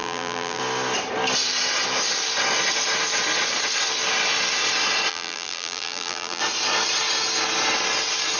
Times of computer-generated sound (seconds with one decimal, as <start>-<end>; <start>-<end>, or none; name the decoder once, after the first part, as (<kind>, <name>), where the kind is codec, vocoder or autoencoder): 0.0-0.6 (vocoder, BigVGAN v2); 5.1-6.4